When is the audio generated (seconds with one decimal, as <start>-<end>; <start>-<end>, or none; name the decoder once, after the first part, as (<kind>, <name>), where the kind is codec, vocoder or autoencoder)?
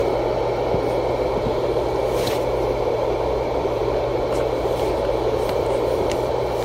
1.1-2.0 (vocoder, BigVGAN v2); 2.8-3.8; 4.4-6.6